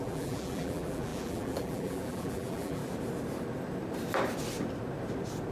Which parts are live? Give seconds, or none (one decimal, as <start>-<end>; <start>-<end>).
2.8-5.5

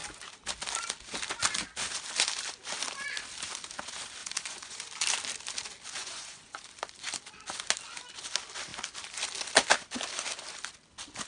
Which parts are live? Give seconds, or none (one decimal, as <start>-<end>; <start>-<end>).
0.0-4.2; 4.8-6.0; 6.6-11.3

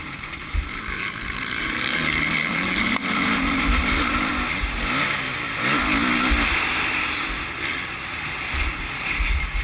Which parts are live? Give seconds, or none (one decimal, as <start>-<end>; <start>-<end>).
4.3-7.9

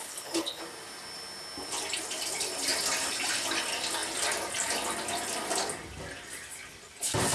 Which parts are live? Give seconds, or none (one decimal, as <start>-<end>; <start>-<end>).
0.6-7.3